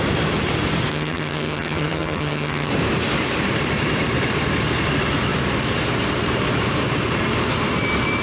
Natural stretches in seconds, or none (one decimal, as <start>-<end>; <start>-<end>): 0.0-0.9; 2.7-8.2